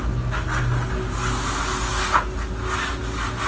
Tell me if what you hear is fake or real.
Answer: real